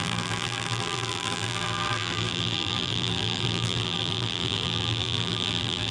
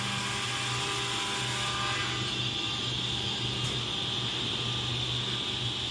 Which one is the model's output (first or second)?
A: first